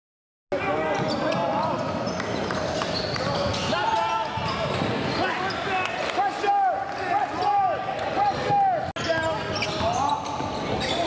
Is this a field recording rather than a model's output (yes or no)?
yes